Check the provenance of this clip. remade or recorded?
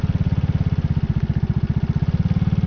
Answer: recorded